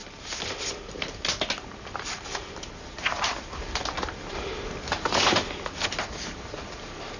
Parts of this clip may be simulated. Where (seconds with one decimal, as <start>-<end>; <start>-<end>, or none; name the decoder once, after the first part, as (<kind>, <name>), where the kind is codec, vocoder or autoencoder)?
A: none